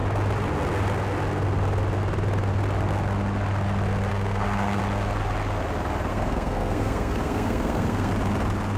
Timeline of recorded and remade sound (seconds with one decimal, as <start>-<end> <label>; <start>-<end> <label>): 0.0-4.1 recorded; 4.1-4.8 remade; 4.8-6.1 recorded; 6.1-8.1 remade; 8.1-8.8 recorded